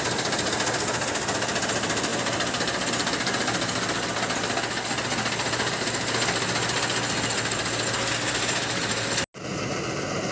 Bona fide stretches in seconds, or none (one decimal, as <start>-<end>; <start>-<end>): 0.0-10.3